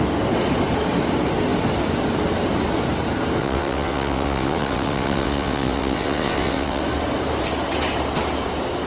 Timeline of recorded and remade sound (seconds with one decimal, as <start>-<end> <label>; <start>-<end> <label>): 0.0-3.4 recorded; 3.4-6.8 remade; 6.8-8.9 recorded